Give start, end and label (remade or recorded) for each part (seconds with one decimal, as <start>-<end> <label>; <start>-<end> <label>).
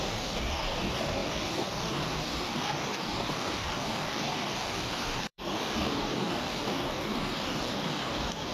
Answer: 0.0-8.5 remade